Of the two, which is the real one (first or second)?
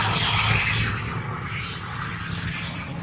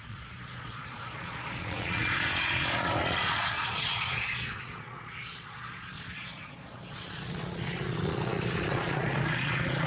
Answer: first